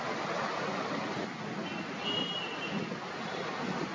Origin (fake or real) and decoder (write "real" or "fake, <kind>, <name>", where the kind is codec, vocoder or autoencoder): real